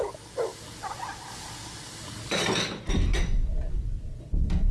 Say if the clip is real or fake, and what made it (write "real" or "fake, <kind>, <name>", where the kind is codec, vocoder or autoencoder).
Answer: real